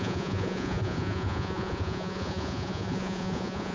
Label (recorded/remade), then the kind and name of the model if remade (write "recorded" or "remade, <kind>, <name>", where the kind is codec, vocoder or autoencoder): remade, vocoder, Vocos